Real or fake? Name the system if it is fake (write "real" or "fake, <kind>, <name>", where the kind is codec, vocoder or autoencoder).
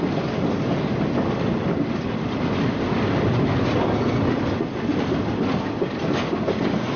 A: real